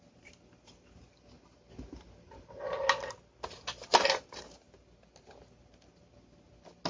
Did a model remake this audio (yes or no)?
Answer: no